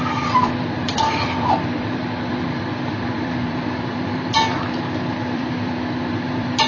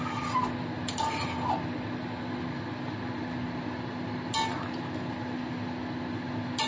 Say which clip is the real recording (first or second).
second